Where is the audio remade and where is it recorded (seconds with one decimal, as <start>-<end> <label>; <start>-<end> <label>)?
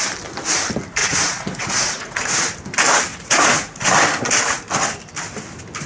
0.0-1.0 recorded; 1.0-2.3 remade; 2.3-3.1 recorded; 3.1-3.9 remade; 3.9-5.9 recorded